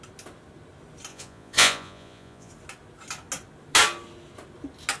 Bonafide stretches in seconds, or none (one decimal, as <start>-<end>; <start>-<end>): 0.0-1.1; 2.5-5.0